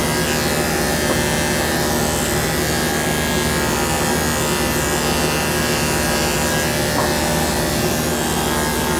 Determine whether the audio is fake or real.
real